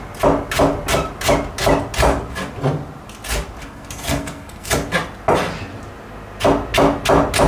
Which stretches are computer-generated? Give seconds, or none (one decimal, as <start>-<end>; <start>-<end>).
3.6-4.7